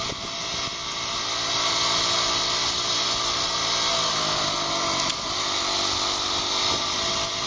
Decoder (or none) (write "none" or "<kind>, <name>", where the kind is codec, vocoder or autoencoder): none